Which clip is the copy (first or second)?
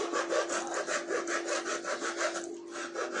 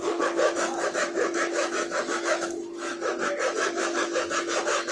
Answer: second